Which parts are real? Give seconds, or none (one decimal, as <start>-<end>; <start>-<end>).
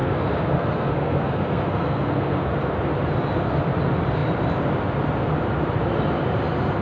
2.5-6.8